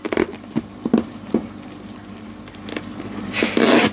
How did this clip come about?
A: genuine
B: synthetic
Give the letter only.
A